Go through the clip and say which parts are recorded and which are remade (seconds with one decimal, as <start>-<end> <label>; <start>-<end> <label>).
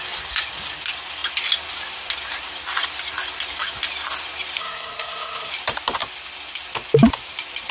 0.0-4.6 recorded; 4.6-5.5 remade; 5.5-7.7 recorded